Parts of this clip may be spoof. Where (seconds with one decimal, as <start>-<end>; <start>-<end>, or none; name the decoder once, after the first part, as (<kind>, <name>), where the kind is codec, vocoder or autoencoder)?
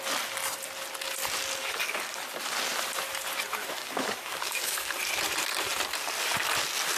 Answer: 1.6-2.2 (codec, DAC); 3.8-4.9